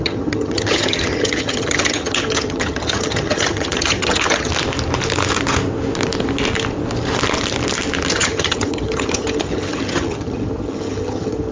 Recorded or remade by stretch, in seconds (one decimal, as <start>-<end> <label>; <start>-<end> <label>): 0.0-4.5 remade; 4.5-8.1 recorded; 8.1-11.5 remade